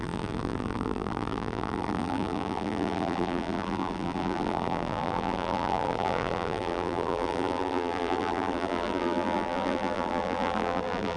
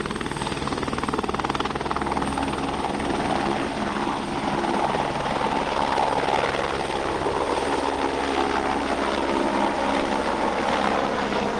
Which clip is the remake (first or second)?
first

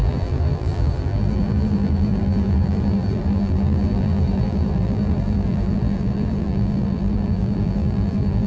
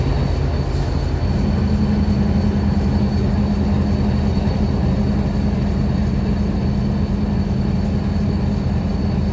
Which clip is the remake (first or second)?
first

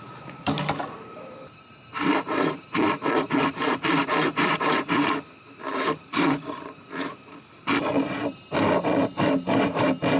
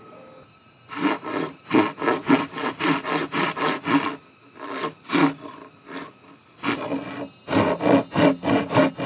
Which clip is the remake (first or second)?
first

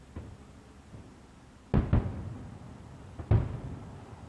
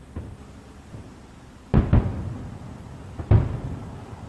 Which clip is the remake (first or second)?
second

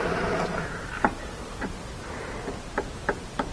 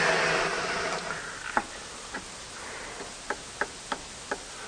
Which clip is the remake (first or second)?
first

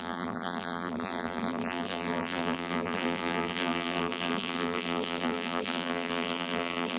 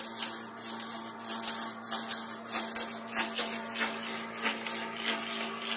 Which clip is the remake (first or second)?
first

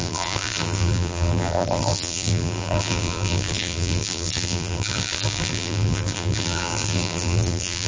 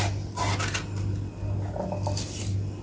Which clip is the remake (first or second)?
first